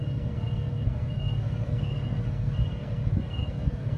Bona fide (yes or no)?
no